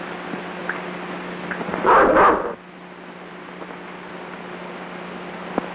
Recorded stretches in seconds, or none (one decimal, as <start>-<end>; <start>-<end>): 0.0-5.7